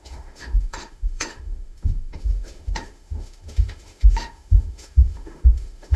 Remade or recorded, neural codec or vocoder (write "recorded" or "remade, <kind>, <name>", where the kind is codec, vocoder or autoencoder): remade, autoencoder, DAC-VAE